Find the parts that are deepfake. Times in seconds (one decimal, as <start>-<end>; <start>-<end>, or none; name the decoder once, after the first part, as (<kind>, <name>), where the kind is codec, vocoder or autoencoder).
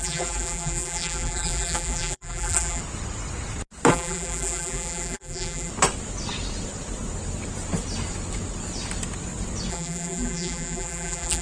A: 0.0-2.8 (vocoder, BigVGAN v2); 3.9-5.7; 9.7-11.4